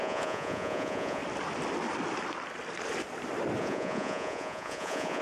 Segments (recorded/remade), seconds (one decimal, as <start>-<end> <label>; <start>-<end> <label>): 0.0-1.2 remade; 1.2-3.6 recorded; 3.6-5.2 remade